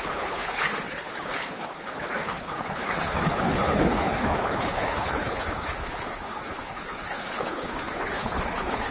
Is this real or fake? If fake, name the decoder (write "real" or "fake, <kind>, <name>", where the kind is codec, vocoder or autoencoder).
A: fake, codec, HILCodec